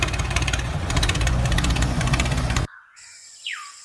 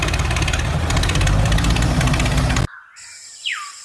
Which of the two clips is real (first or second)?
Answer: second